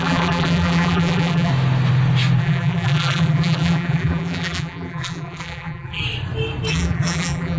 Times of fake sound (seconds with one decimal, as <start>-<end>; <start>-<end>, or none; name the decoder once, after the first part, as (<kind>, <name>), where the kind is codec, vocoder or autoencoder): 0.0-1.5 (vocoder, BigVGAN v2); 2.4-6.0; 6.7-7.6